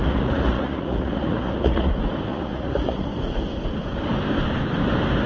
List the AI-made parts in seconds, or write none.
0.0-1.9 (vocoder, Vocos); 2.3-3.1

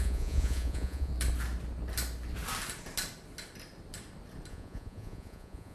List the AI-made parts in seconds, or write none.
0.0-1.1 (vocoder, Vocos); 4.5-5.7

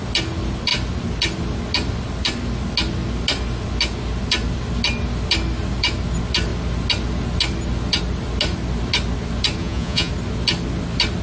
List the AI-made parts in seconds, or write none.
9.6-10.1 (vocoder, Vocos)